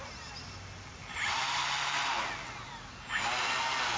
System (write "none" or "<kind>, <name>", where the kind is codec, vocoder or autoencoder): none